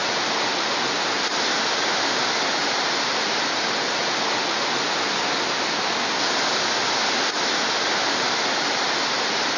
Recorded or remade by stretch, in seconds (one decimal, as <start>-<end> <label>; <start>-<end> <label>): 0.0-9.6 recorded